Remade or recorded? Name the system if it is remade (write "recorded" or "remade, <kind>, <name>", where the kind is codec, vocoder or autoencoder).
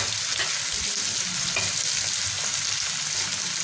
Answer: recorded